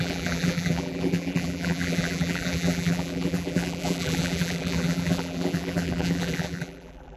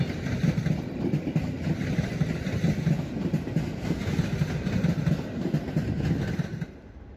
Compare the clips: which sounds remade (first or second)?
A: first